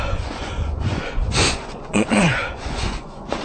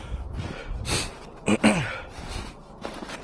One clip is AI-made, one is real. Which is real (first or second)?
second